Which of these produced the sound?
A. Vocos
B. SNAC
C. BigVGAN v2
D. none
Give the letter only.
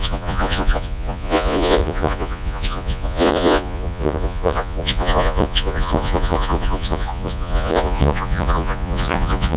A